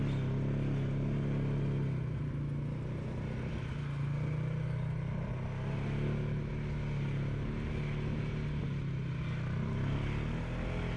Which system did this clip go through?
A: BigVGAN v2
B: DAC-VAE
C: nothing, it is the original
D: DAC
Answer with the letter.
C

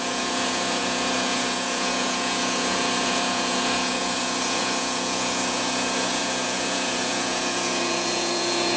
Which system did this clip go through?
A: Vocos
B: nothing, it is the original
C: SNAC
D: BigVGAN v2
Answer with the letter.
A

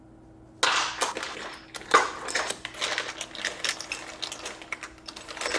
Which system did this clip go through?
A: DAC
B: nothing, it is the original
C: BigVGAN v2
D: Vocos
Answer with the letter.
B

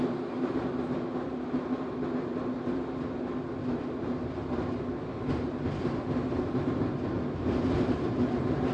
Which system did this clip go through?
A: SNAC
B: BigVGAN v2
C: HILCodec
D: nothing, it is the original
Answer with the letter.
D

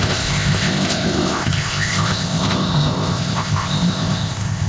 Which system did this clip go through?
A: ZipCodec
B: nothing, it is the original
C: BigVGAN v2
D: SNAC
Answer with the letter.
A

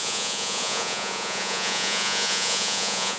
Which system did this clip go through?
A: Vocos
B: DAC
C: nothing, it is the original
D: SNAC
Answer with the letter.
A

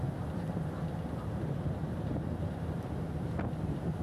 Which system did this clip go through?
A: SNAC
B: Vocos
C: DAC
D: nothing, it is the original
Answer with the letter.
D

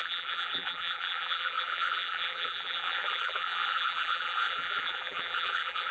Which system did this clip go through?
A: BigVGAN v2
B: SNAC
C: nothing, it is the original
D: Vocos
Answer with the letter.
A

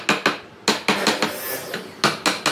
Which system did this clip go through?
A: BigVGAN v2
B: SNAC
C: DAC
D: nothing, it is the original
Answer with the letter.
D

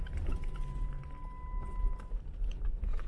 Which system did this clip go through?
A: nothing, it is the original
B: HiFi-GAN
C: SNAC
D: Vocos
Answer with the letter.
A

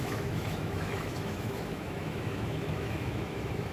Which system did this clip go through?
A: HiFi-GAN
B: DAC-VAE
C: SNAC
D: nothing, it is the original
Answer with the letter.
B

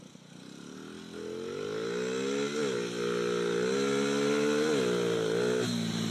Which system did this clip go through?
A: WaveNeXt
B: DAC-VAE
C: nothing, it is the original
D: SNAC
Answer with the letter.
C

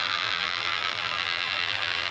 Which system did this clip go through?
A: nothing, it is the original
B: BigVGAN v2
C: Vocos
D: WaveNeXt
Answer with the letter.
B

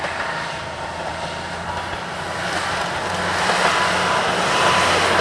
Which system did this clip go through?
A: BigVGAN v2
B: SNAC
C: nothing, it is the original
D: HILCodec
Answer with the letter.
C